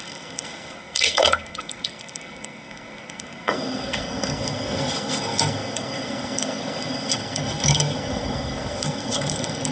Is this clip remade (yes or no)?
yes